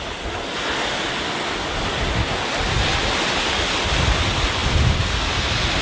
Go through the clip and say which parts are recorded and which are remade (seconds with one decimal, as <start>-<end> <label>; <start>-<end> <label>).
0.0-5.8 recorded